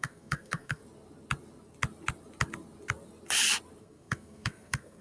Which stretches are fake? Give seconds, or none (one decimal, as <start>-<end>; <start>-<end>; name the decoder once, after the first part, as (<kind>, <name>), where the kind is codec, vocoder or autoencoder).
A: 0.0-0.8 (codec, SNAC); 3.8-5.0